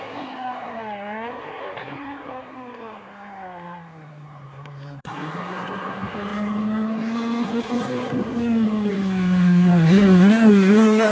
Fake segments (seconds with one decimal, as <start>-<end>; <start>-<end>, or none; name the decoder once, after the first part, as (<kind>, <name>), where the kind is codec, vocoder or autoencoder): 0.0-11.1 (codec, SNAC)